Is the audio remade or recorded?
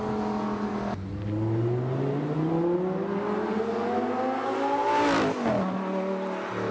recorded